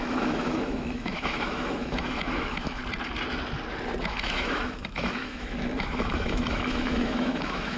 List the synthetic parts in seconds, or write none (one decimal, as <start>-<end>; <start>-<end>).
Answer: 0.0-2.8; 4.0-7.8